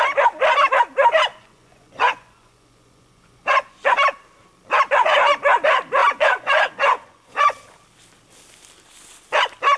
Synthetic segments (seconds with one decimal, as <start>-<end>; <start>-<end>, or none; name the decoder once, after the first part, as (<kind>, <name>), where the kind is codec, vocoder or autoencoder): 1.3-3.9 (vocoder, Vocos); 6.0-7.8